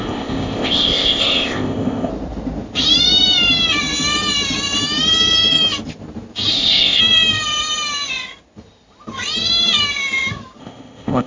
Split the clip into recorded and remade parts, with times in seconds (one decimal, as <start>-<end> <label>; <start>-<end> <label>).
0.0-2.1 remade; 2.1-6.5 recorded; 6.5-7.0 remade; 7.0-10.6 recorded; 10.6-11.3 remade